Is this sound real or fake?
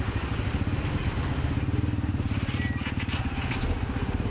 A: real